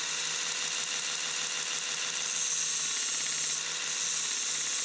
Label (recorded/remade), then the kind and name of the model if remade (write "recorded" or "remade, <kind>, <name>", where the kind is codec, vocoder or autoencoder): recorded